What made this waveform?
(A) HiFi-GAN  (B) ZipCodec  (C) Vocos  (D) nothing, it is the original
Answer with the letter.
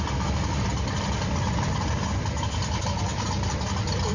D